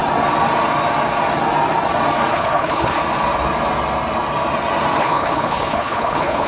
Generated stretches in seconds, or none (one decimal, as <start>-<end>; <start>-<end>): 2.3-3.0; 5.0-6.5

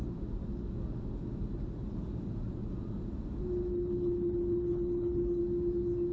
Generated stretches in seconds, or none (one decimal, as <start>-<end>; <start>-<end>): 3.6-5.4